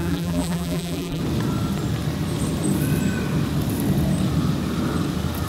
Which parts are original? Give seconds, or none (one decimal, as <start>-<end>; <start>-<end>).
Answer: 1.2-5.5